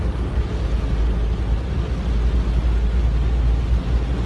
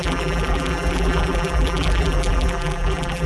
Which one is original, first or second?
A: first